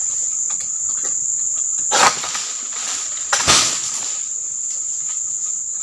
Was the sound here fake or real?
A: real